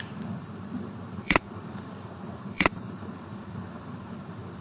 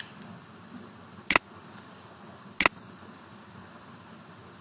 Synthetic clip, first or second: first